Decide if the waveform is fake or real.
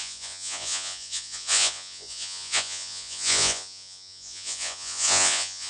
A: fake